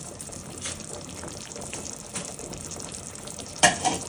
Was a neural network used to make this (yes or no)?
yes